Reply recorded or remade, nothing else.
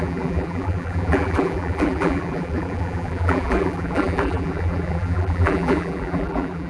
remade